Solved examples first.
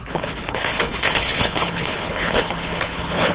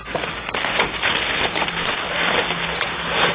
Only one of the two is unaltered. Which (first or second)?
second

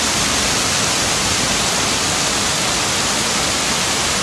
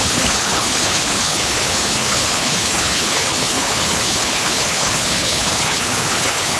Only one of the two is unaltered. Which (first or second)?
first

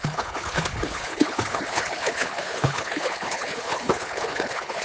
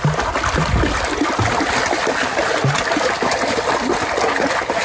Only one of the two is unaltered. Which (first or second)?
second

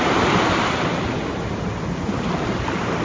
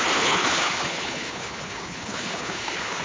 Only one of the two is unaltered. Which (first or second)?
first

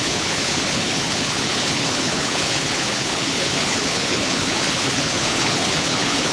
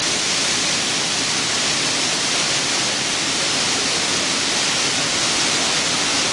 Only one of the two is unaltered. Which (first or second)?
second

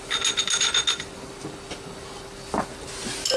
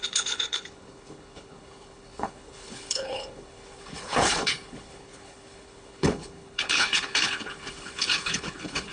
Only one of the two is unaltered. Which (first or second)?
first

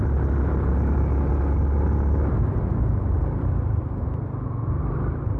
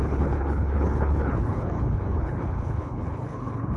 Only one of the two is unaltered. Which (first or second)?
first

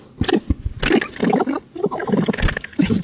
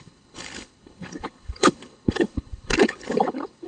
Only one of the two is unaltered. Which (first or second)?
first